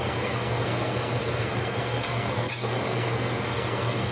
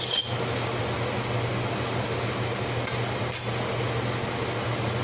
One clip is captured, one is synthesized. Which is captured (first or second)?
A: second